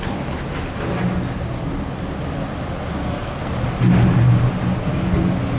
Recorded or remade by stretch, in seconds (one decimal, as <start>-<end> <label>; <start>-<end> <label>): 0.0-3.0 recorded; 3.0-3.5 remade; 3.5-5.6 recorded